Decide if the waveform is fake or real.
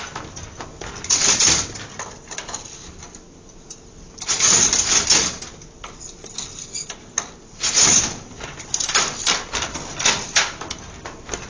real